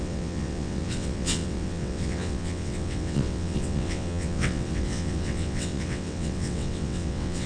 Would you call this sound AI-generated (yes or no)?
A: yes